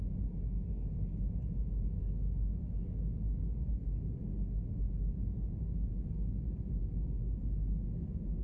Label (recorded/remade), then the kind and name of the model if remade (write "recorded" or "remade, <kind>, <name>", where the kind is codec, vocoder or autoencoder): recorded